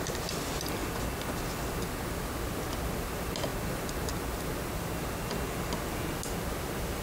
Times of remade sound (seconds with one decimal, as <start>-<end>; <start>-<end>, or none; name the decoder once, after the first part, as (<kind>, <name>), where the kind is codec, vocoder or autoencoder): none